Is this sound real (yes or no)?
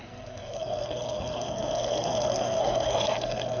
no